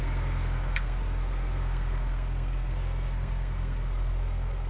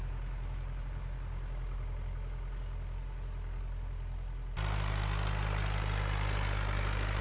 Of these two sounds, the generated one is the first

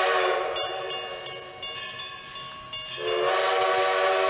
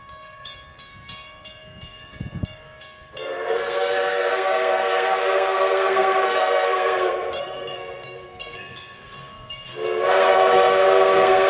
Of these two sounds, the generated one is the second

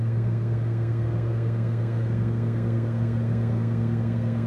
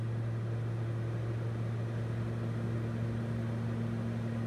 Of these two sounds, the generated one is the first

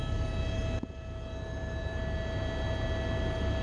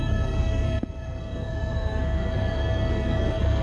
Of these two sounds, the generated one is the second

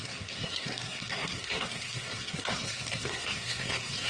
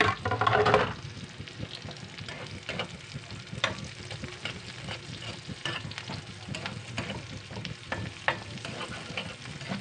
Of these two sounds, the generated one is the first